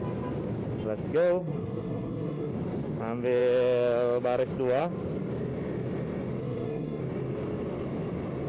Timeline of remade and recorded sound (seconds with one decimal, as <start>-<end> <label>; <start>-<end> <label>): 0.0-1.4 recorded; 1.4-2.5 remade; 2.5-6.4 recorded; 6.4-7.0 remade; 7.0-8.5 recorded